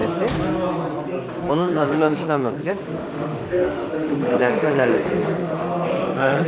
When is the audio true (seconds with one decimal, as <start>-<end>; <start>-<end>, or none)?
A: 0.0-1.5